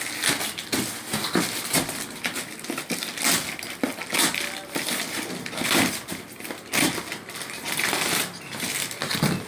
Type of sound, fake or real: real